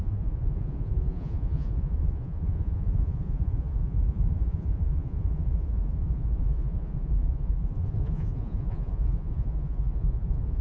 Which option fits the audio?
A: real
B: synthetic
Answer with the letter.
B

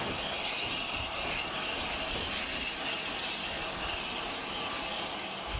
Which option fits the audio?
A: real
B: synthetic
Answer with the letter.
A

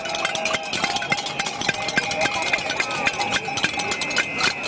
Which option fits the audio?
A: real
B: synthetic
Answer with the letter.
A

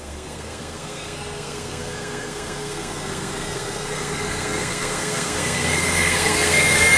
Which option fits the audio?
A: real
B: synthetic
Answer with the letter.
B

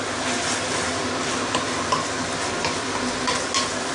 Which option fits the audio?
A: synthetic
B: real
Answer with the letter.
B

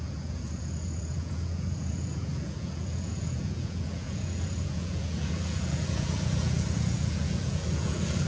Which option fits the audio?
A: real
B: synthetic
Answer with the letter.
B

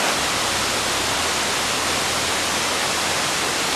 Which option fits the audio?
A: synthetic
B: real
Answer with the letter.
B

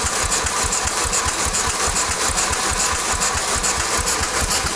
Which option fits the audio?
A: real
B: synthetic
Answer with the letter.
A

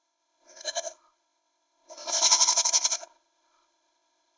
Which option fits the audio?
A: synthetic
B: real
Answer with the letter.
A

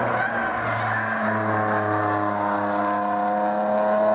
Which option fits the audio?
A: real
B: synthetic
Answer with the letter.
A